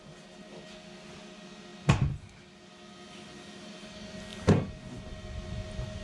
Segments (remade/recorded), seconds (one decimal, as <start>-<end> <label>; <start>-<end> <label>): 0.0-6.0 recorded